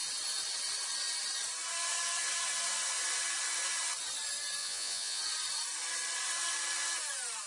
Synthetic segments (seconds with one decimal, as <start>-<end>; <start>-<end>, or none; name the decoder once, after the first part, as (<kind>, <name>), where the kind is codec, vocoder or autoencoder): 4.6-5.2 (vocoder, Vocos)